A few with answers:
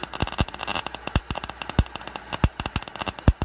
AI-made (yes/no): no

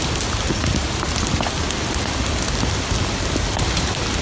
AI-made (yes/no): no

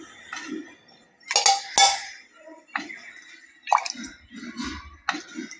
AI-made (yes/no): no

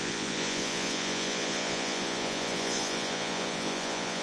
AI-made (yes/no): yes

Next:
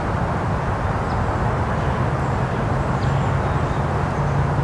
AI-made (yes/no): no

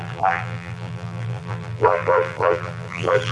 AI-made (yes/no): yes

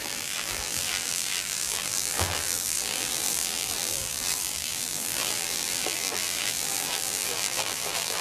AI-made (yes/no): yes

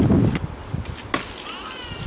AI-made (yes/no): no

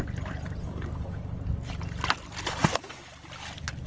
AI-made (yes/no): no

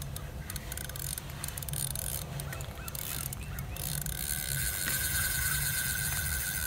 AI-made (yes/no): yes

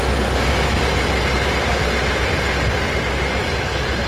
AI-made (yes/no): no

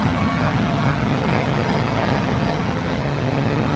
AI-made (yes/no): yes